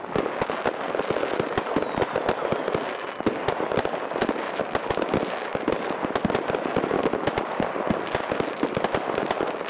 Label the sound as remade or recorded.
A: recorded